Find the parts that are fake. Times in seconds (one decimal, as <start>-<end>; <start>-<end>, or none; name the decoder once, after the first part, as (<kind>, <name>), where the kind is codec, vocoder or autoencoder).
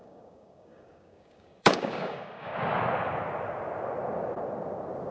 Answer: 0.0-2.5 (codec, DAC)